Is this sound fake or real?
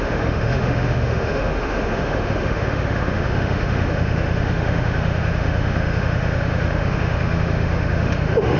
fake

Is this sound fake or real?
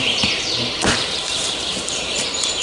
fake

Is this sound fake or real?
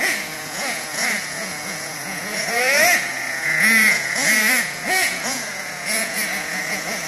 fake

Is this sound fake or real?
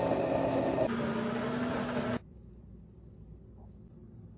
real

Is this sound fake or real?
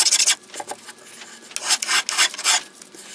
real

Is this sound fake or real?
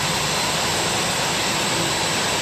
real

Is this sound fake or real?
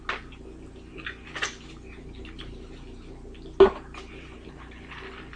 real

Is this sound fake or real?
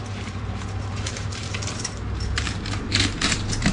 fake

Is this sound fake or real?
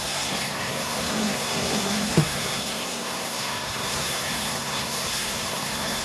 fake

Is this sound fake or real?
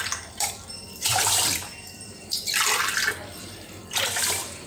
fake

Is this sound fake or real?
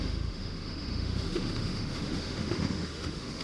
fake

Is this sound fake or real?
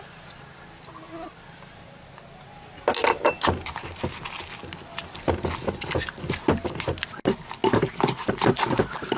real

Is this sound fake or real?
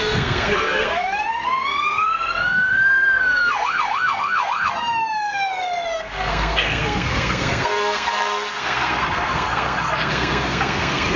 fake